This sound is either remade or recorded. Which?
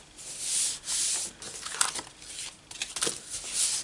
recorded